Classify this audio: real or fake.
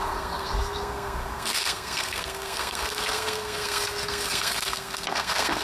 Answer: fake